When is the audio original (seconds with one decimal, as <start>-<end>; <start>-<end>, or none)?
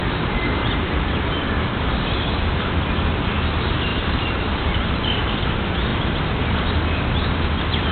0.0-0.6; 1.1-3.9; 5.3-7.9